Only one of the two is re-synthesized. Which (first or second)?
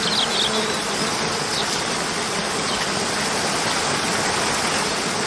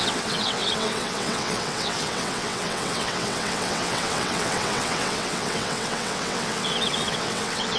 second